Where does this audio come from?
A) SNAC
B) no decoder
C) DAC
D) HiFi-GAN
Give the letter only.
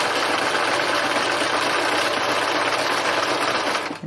B